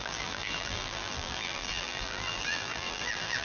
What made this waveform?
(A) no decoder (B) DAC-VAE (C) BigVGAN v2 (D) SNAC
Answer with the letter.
C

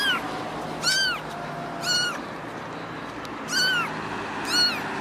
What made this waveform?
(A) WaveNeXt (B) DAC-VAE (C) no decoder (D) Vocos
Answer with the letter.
C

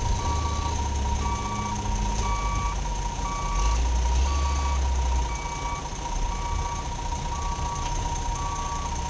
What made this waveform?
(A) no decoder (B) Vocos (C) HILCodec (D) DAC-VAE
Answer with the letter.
A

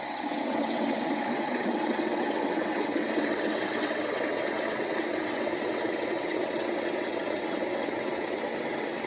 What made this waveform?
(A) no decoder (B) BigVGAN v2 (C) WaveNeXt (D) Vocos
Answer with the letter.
C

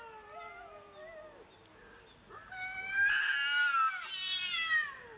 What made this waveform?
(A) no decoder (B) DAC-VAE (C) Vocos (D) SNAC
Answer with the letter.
A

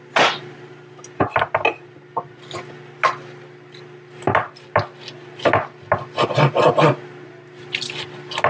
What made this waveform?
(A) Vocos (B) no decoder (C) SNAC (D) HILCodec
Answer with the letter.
B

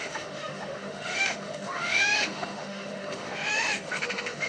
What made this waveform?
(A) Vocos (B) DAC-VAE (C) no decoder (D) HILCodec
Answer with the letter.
B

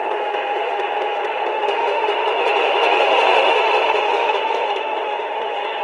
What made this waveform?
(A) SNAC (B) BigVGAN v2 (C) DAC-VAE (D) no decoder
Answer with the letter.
C